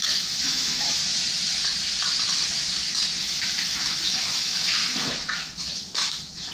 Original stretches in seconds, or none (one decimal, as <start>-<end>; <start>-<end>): 1.0-3.2